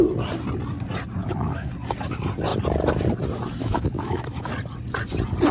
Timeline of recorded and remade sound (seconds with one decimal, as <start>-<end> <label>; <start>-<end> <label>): 0.0-1.2 recorded; 1.2-1.7 remade; 1.7-3.6 recorded; 3.6-4.5 remade; 4.5-5.5 recorded